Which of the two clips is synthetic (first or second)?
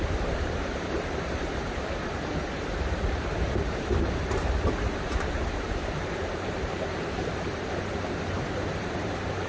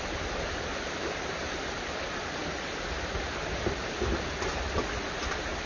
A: first